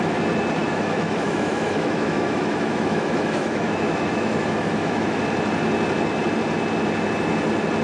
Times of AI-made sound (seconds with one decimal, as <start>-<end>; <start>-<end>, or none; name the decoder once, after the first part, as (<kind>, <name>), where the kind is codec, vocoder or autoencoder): 0.6-5.2 (autoencoder, DAC-VAE)